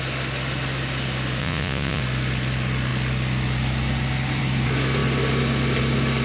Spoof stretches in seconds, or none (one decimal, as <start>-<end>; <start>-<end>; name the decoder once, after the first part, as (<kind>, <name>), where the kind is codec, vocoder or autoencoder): 1.4-2.0 (vocoder, Vocos)